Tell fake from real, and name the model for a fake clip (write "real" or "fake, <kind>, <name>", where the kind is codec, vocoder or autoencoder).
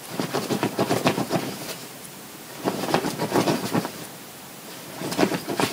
fake, vocoder, BigVGAN v2